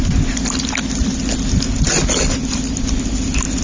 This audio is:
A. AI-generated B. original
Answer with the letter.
B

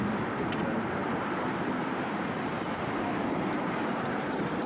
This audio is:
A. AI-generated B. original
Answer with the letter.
A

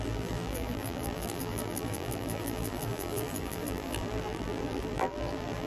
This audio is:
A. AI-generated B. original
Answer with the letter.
A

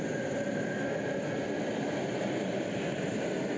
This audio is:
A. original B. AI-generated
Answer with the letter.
A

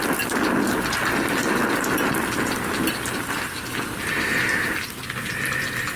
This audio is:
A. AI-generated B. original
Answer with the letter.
B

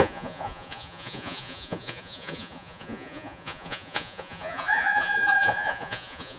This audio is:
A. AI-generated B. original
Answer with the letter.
A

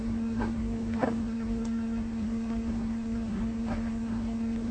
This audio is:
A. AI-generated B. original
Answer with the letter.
A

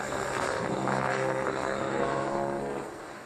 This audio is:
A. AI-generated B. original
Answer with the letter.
A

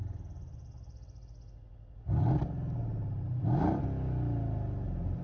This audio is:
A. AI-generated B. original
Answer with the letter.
B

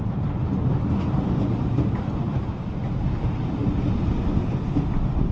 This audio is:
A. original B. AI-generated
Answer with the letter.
A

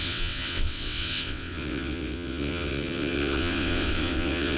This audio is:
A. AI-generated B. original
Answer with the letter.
A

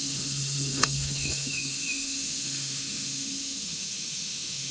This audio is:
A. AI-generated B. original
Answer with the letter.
A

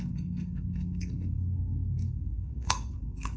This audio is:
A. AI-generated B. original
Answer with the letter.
A